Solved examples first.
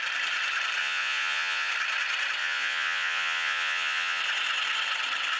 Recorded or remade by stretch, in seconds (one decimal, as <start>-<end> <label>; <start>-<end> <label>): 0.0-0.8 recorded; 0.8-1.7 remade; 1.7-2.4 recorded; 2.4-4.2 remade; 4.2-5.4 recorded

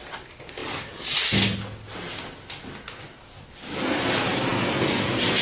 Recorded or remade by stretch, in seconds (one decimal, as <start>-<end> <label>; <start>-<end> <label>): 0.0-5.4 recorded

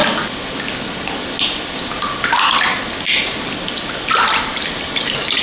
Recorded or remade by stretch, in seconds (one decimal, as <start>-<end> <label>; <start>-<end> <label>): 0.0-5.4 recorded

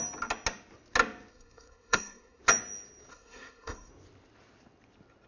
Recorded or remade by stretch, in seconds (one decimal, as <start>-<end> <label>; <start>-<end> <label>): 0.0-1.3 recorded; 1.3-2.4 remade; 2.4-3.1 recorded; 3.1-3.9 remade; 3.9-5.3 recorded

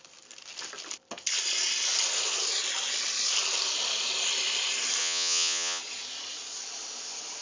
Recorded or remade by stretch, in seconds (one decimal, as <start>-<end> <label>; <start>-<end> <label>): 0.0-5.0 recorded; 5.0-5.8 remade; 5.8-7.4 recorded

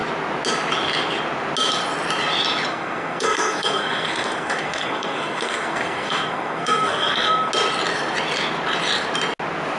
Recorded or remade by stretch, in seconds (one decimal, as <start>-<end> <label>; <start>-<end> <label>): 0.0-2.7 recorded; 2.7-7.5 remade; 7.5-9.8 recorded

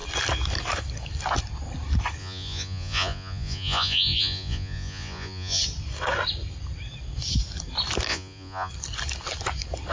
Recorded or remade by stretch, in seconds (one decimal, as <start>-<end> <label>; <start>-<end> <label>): 0.0-2.2 recorded; 2.2-5.6 remade; 5.6-8.1 recorded; 8.1-8.7 remade; 8.7-9.9 recorded

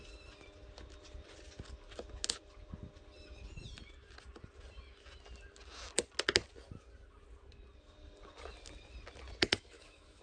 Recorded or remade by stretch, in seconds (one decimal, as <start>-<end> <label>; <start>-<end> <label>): 0.0-9.5 recorded; 9.5-10.2 remade